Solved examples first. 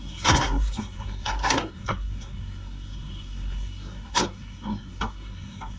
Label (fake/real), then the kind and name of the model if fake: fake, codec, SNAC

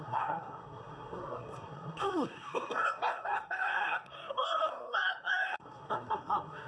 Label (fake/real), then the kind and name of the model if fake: fake, codec, SNAC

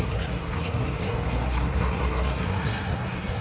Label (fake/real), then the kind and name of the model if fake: fake, codec, SNAC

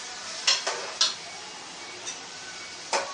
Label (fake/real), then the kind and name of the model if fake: real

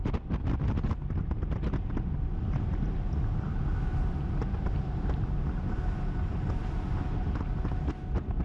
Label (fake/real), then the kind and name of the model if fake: real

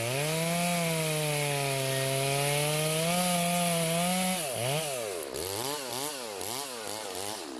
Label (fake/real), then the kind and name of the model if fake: real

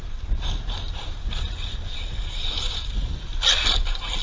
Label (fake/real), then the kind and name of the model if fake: real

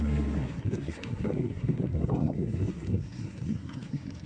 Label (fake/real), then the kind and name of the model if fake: fake, codec, SNAC